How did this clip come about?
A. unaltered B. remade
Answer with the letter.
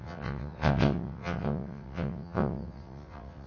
B